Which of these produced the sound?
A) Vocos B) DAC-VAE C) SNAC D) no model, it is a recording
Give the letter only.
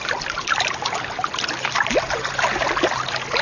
D